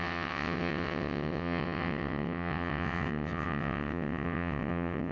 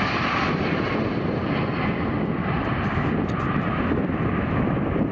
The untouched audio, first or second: second